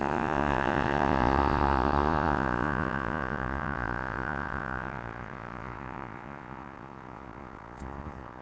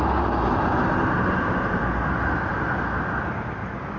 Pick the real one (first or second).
second